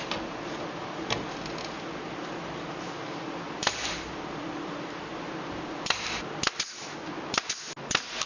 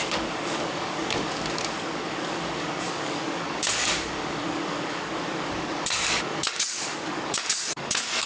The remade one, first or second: second